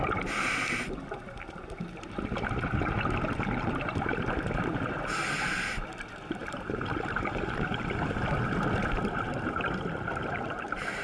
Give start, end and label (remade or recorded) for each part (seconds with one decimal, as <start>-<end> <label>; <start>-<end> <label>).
0.0-11.0 recorded